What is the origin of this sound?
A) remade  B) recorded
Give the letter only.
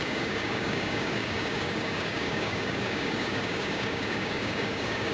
A